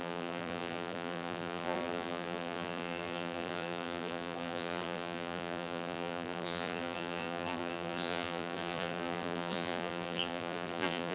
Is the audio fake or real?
fake